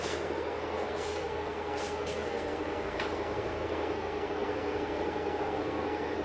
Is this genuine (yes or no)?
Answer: no